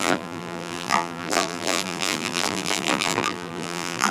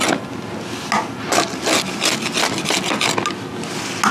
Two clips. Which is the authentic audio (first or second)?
second